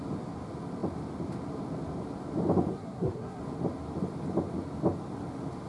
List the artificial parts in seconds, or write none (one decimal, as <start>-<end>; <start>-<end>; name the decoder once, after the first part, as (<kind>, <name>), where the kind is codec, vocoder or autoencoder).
2.7-3.4 (codec, SNAC)

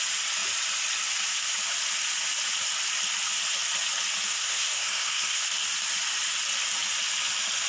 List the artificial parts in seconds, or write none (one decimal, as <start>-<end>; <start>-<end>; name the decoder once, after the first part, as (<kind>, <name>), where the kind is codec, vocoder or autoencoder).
4.3-5.4 (codec, SNAC)

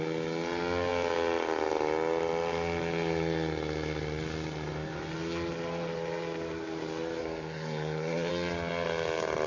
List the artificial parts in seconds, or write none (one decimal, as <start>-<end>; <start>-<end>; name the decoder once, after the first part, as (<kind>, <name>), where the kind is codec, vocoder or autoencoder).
7.2-8.3 (codec, SNAC)

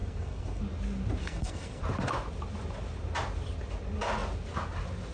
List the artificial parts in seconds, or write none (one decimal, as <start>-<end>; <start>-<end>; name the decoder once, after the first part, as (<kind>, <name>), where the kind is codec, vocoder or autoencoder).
0.0-0.6 (codec, SNAC); 1.2-1.8

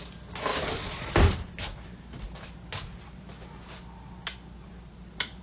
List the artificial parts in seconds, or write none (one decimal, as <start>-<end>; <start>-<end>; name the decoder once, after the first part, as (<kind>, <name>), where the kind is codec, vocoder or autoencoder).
none

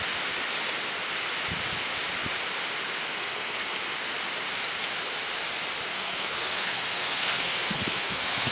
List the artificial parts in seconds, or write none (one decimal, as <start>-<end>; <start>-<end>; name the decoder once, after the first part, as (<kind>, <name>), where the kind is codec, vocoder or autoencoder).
3.0-3.7 (codec, SNAC); 5.9-8.5